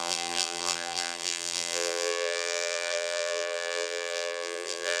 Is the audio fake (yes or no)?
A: yes